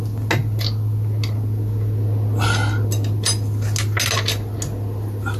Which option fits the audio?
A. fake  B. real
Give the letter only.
B